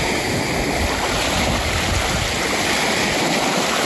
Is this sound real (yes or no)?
yes